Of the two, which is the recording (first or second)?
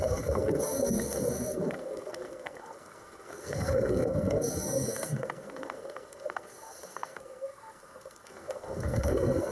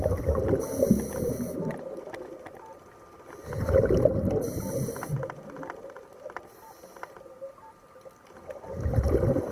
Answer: second